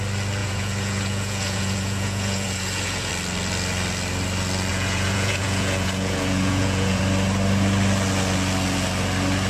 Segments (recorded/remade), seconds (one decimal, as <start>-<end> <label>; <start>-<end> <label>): 0.0-0.4 recorded; 0.4-3.1 remade; 3.1-4.7 recorded; 4.7-7.0 remade; 7.0-9.5 recorded